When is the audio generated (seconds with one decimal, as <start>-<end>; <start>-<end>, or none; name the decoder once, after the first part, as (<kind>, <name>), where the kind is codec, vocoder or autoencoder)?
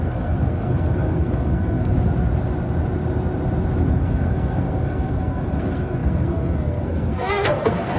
0.0-1.9 (codec, SNAC); 3.9-8.0